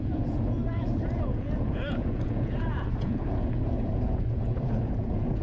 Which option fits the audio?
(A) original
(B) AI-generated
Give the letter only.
B